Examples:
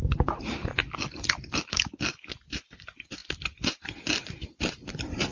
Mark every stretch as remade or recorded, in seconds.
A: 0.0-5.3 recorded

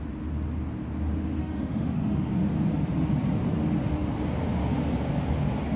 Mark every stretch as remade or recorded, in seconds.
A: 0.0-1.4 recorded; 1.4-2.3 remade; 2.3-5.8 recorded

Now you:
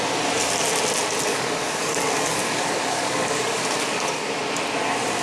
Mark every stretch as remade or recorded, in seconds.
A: 0.0-1.3 recorded; 1.3-4.4 remade; 4.4-5.2 recorded